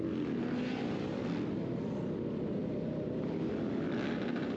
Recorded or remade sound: recorded